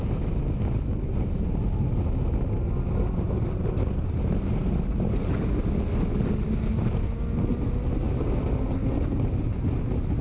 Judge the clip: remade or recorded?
recorded